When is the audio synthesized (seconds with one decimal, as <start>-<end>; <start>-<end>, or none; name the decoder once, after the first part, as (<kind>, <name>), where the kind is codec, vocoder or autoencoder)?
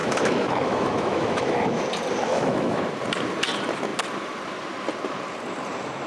0.0-1.8 (autoencoder, DAC-VAE); 2.3-2.8